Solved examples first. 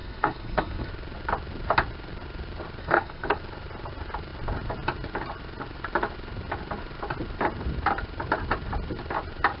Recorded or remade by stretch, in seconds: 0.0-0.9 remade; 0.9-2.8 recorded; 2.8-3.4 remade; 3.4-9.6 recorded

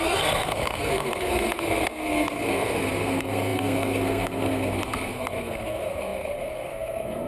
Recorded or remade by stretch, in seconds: 0.0-7.3 remade

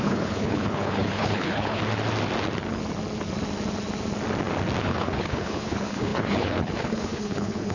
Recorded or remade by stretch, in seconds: 0.0-1.8 remade; 1.8-4.8 recorded; 4.8-7.7 remade

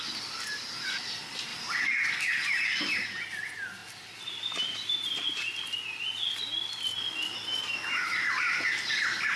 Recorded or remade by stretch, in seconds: 0.0-1.5 recorded; 1.5-2.1 remade; 2.1-3.8 recorded; 3.8-5.8 remade; 5.8-9.4 recorded

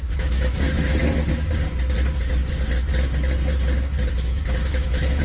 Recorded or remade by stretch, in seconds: 0.0-1.0 remade; 1.0-4.1 recorded; 4.1-5.2 remade

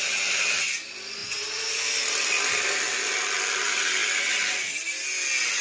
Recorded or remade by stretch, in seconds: 0.0-5.6 recorded

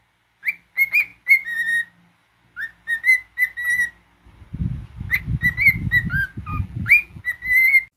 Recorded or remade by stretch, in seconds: 0.0-6.5 recorded; 6.5-7.2 remade; 7.2-8.0 recorded

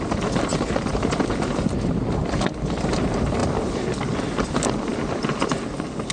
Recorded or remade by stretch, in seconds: 0.0-6.1 recorded